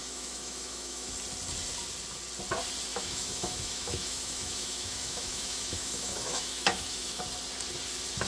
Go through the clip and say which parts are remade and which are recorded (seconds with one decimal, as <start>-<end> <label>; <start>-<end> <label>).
0.0-1.1 remade; 1.1-2.9 recorded; 2.9-7.2 remade; 7.2-8.3 recorded